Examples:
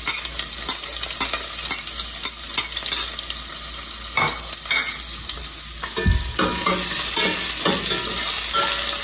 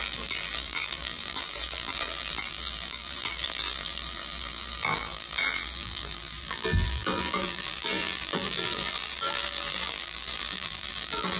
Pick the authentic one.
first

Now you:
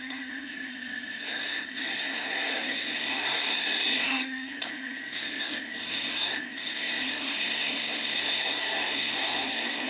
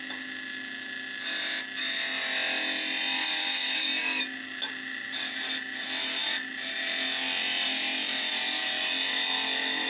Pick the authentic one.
second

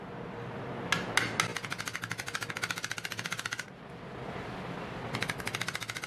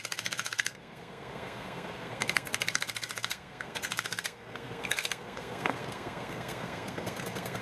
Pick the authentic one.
first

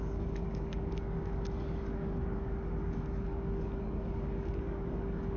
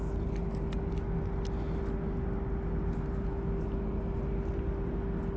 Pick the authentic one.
second